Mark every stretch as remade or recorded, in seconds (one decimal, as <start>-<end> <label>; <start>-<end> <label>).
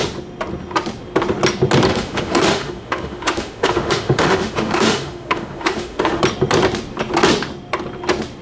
0.0-1.9 recorded; 1.9-6.2 remade; 6.2-8.4 recorded